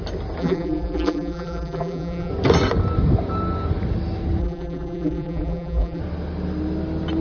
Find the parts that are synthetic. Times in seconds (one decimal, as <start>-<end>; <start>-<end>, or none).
0.4-2.3; 4.4-6.0